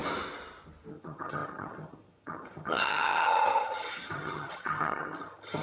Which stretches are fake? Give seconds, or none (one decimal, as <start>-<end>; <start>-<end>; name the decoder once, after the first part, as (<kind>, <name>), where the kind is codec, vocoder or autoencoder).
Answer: 0.9-5.6 (vocoder, HiFi-GAN)